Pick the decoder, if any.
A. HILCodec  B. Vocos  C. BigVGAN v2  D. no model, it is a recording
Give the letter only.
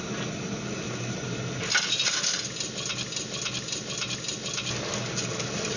D